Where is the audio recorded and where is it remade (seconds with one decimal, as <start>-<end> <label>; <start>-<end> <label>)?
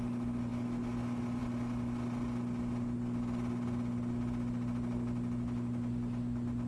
0.0-6.7 recorded